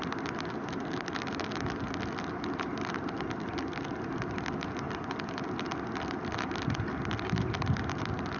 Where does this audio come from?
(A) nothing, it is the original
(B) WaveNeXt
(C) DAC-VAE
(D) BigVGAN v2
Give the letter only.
A